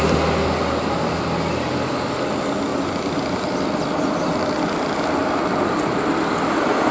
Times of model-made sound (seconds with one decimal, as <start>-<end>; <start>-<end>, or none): 2.7-6.9